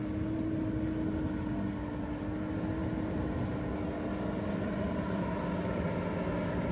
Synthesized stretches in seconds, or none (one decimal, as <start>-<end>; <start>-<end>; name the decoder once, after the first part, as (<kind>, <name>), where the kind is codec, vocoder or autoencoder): none